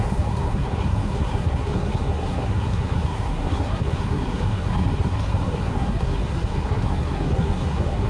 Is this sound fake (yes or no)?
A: yes